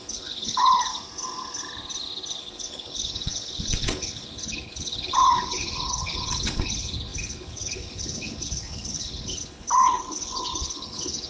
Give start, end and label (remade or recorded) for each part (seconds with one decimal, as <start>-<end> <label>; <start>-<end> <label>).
0.0-0.9 remade; 0.9-2.4 recorded; 2.4-11.3 remade